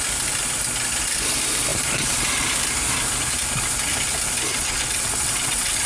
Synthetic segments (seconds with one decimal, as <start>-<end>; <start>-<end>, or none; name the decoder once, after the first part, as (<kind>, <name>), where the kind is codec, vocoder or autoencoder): 4.5-5.9 (vocoder, WaveNeXt)